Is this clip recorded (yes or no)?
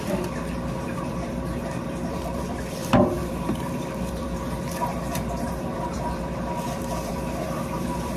no